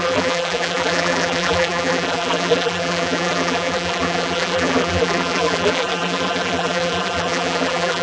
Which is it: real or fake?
fake